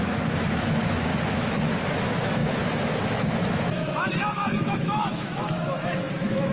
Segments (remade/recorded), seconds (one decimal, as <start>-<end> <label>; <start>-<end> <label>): 0.0-1.1 remade; 1.1-1.9 recorded; 1.9-6.5 remade